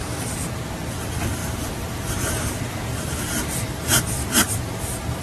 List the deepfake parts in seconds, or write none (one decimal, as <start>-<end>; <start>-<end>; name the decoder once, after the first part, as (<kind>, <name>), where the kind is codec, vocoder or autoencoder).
1.4-4.5 (vocoder, BigVGAN v2)